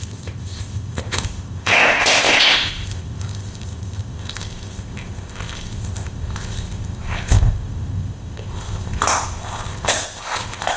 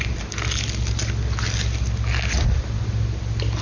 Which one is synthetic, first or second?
first